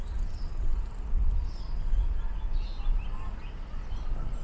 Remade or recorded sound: recorded